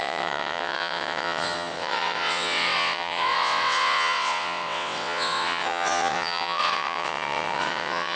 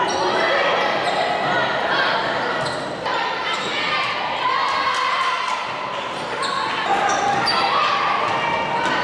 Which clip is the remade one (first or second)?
first